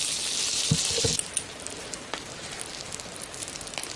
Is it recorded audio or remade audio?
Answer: recorded